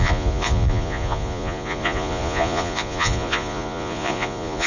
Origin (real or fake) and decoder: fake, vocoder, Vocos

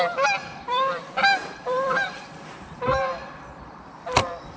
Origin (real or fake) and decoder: fake, vocoder, BigVGAN v2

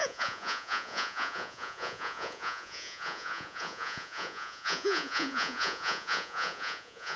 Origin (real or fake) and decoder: fake, vocoder, Vocos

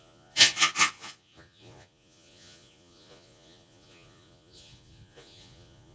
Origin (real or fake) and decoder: fake, vocoder, Vocos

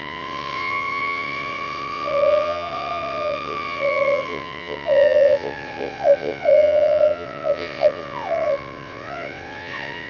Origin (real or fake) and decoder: fake, vocoder, WaveNeXt